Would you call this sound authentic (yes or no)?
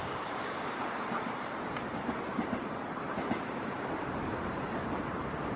no